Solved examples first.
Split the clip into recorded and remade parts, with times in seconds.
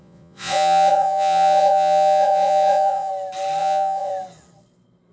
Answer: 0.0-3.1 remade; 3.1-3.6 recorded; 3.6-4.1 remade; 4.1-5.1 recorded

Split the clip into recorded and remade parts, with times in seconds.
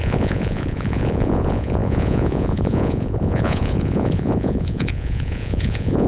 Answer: 0.0-6.1 remade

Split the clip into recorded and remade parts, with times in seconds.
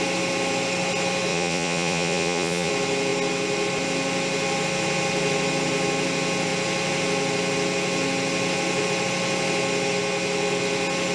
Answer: 0.0-1.3 recorded; 1.3-2.7 remade; 2.7-11.1 recorded